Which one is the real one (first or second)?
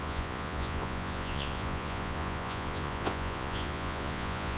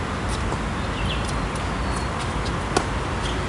second